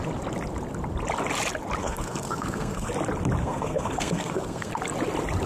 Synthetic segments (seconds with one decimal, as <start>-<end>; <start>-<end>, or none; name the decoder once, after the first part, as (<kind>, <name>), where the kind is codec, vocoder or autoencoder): 1.8-2.9 (codec, SNAC); 3.4-4.7